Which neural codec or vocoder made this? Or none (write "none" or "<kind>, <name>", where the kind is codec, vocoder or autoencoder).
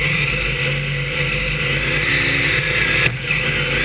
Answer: none